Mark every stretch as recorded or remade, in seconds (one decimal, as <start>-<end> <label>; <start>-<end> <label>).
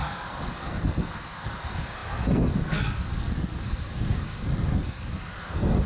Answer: 0.0-5.9 remade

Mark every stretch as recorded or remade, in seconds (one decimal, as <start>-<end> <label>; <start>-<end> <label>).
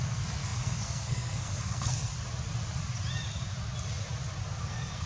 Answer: 0.0-2.1 remade; 2.1-4.6 recorded; 4.6-5.1 remade